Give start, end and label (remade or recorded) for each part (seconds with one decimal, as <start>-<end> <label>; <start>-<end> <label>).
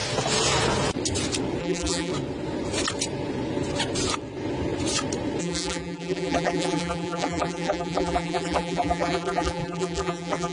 0.0-1.6 recorded; 1.6-2.1 remade; 2.1-5.4 recorded; 5.4-10.5 remade